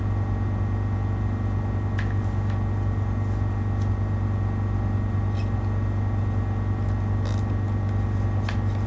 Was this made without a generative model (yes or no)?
yes